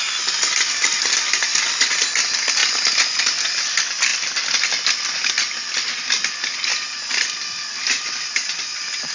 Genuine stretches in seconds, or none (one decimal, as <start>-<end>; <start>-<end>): 0.0-9.1